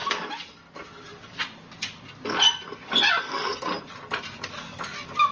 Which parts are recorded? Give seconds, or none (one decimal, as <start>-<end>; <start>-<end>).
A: 0.0-3.2; 3.7-5.3